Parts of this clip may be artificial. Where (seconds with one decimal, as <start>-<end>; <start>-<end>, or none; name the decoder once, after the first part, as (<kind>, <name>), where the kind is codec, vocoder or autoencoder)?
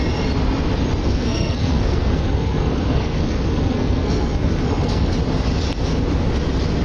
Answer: 1.0-5.1 (codec, SNAC)